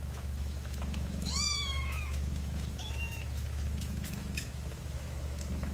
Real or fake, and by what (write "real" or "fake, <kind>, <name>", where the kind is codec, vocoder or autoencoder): fake, autoencoder, DAC-VAE